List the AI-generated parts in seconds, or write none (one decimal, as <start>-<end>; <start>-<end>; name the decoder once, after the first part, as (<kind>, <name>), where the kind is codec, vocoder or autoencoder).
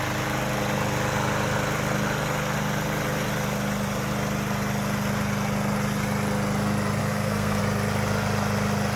7.0-7.6 (codec, SNAC)